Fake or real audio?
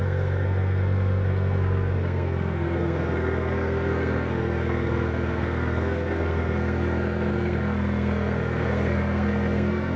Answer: fake